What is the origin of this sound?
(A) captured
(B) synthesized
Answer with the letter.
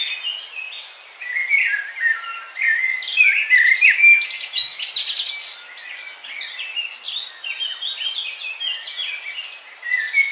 A